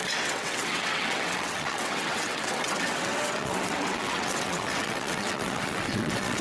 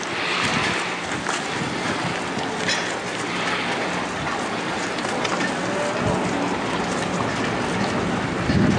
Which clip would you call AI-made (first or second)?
first